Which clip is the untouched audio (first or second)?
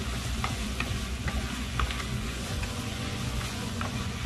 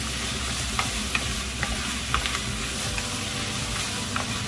second